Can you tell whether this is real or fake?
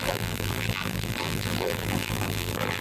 fake